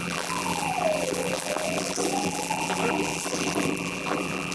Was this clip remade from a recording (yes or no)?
yes